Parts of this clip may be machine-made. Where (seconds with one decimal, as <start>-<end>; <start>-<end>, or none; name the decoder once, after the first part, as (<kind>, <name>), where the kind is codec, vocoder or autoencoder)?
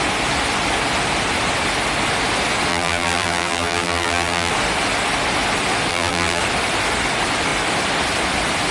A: 2.7-4.5 (vocoder, BigVGAN v2); 5.9-6.4